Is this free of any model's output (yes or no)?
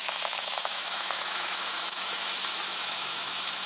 no